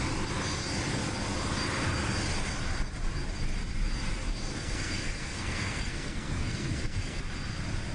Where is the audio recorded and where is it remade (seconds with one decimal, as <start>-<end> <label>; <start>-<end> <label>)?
0.0-4.5 recorded; 4.5-7.2 remade; 7.2-7.9 recorded